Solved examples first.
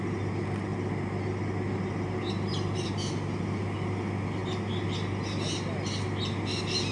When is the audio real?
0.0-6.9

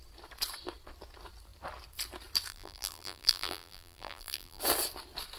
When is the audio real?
0.0-2.5; 4.6-5.4